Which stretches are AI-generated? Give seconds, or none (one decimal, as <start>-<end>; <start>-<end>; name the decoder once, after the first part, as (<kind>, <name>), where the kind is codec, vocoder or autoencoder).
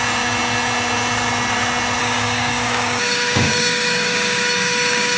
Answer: 2.0-5.2 (codec, DAC)